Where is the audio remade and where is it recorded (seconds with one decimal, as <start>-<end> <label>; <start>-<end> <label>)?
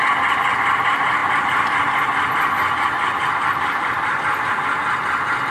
0.0-5.5 recorded